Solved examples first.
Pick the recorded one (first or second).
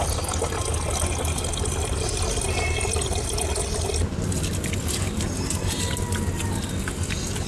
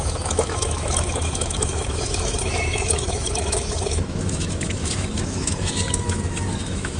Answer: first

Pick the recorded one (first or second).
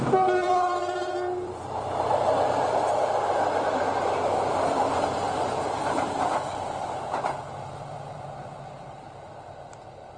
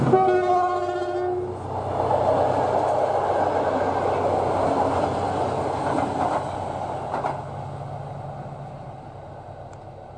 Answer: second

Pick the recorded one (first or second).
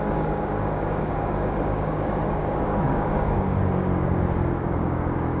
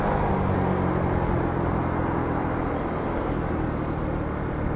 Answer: second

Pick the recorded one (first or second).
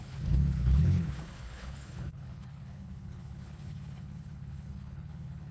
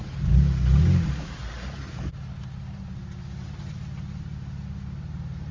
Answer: second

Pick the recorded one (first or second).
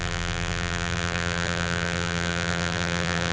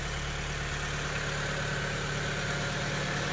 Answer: second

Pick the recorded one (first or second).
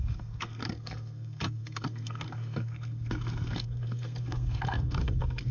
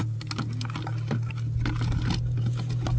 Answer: second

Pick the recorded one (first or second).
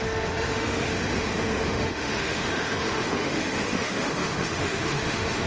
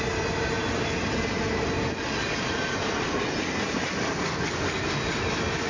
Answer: second